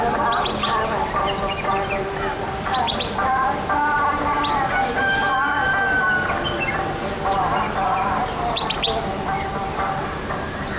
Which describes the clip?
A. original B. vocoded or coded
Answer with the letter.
A